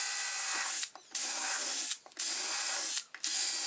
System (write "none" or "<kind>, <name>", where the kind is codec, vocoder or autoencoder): none